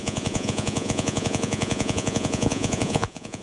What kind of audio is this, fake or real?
fake